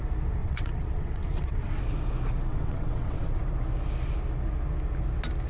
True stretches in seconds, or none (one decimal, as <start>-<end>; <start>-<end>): 0.0-0.4; 1.8-2.5; 3.4-5.5